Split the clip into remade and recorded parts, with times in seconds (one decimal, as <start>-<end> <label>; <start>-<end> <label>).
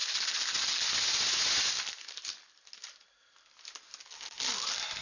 0.0-5.0 recorded